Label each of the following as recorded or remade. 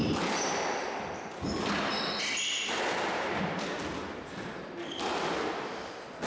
recorded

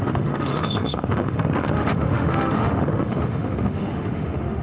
remade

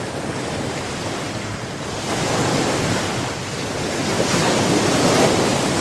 recorded